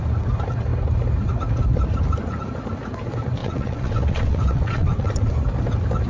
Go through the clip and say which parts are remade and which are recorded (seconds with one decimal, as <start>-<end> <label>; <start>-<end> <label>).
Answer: 0.0-3.4 recorded; 3.4-5.3 remade; 5.3-6.1 recorded